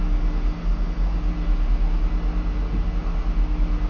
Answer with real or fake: real